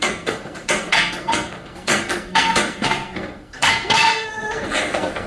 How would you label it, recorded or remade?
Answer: remade